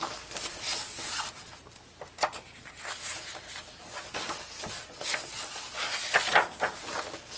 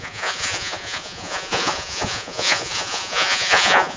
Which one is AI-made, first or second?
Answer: second